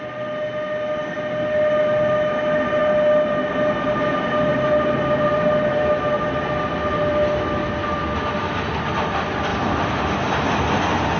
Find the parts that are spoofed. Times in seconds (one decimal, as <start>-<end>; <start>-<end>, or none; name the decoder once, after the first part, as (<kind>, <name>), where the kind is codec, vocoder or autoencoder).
none